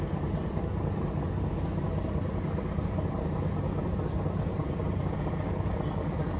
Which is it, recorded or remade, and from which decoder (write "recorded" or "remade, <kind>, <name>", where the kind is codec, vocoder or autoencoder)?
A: recorded